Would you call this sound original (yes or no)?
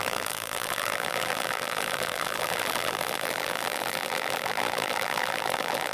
no